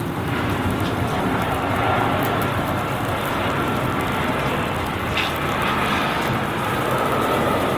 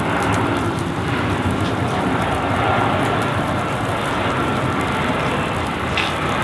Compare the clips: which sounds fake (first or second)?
second